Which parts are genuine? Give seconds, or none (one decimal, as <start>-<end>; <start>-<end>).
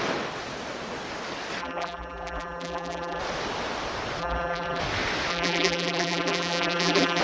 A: 0.0-1.6; 3.2-4.2; 4.8-5.3